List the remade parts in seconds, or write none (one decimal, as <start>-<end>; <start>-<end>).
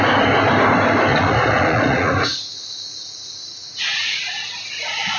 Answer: 1.1-4.2